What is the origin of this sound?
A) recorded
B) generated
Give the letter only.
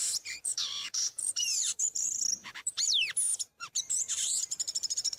B